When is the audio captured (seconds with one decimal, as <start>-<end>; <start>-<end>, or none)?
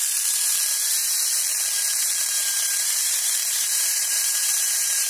0.0-2.0